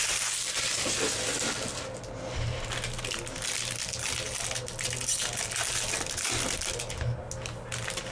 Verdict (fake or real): real